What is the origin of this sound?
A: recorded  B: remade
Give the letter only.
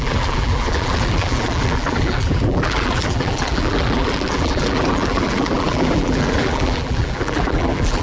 B